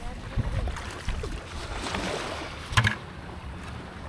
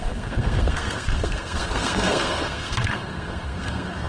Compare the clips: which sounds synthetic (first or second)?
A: second